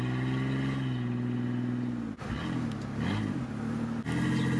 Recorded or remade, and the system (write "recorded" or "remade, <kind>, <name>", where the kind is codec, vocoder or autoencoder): recorded